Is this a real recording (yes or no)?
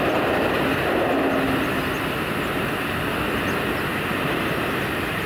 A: yes